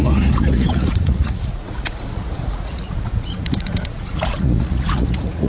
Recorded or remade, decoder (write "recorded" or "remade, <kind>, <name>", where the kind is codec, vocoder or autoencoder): remade, vocoder, Vocos